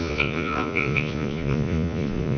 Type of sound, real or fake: fake